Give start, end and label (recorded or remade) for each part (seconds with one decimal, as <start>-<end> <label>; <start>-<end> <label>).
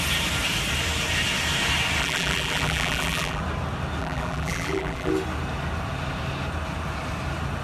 0.0-2.0 recorded; 2.0-3.4 remade; 3.4-4.0 recorded; 4.0-5.1 remade; 5.1-7.6 recorded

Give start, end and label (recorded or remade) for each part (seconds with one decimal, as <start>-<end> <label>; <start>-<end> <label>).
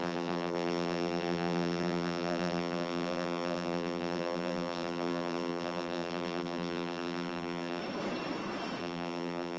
0.0-7.8 remade; 7.8-8.8 recorded; 8.8-9.6 remade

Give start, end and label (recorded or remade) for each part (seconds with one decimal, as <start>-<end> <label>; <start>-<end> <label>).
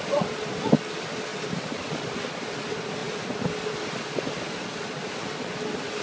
0.0-1.3 recorded; 1.3-2.6 remade; 2.6-3.0 recorded; 3.0-4.3 remade; 4.3-4.7 recorded; 4.7-5.5 remade; 5.5-6.0 recorded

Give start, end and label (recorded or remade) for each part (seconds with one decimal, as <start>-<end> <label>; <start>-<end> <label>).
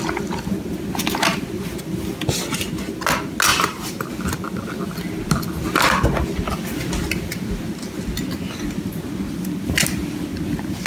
0.0-3.5 recorded; 3.5-4.1 remade; 4.1-10.9 recorded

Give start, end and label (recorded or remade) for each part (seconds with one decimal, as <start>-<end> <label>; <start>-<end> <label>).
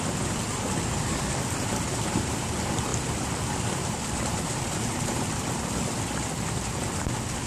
0.0-7.5 remade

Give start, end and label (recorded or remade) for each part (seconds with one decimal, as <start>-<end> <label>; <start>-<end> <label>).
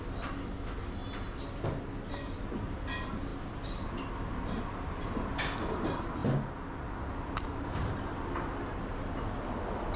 0.0-1.0 recorded; 1.0-2.8 remade; 2.8-3.3 recorded; 3.3-4.6 remade; 4.6-10.0 recorded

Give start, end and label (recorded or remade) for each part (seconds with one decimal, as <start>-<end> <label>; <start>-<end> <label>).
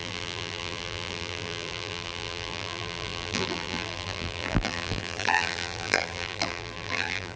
0.0-7.4 remade